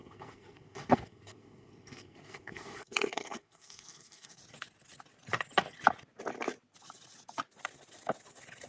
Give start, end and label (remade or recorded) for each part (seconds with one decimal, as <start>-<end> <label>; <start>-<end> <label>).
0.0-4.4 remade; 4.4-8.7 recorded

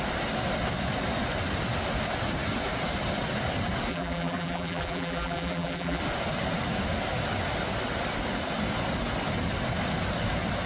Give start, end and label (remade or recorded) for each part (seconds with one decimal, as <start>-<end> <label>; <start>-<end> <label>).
0.0-3.9 recorded; 3.9-6.0 remade; 6.0-10.7 recorded

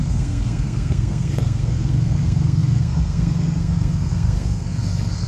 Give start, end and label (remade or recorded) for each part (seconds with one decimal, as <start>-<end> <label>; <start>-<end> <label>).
0.0-5.3 remade

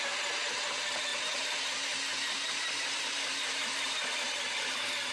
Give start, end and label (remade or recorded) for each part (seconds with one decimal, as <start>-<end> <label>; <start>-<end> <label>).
0.0-5.1 recorded

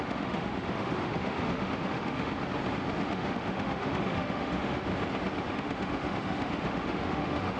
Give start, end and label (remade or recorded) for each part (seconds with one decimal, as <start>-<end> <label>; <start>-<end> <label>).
0.0-2.3 remade; 2.3-3.0 recorded; 3.0-4.9 remade; 4.9-5.5 recorded; 5.5-7.6 remade

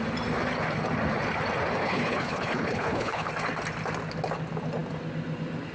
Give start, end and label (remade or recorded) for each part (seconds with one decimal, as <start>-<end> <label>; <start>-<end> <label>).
0.0-1.8 recorded; 1.8-3.3 remade; 3.3-5.7 recorded

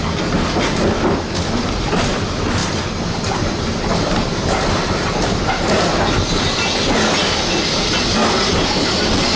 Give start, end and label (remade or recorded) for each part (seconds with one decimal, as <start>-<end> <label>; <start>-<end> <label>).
0.0-9.4 recorded

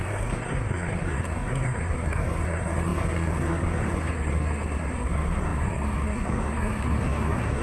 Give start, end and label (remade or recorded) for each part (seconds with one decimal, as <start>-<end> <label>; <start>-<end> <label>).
0.0-7.6 remade